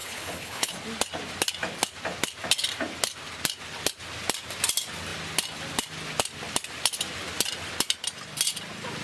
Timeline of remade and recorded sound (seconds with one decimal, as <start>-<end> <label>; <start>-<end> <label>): 0.0-0.7 remade; 0.7-9.0 recorded